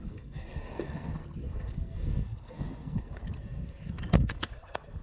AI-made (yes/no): yes